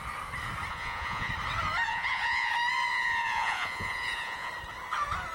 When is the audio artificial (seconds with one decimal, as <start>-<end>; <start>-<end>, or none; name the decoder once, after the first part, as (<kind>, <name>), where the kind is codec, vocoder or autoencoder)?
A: 0.7-1.3 (vocoder, Vocos); 1.9-2.5; 2.9-4.5